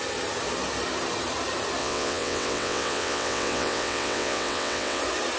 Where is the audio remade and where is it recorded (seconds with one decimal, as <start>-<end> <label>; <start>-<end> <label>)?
0.0-1.8 recorded; 1.8-5.0 remade; 5.0-5.4 recorded